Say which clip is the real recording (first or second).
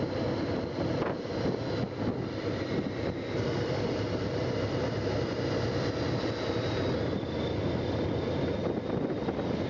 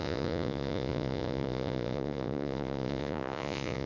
first